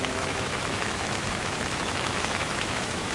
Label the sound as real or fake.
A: fake